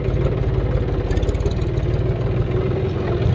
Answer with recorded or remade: recorded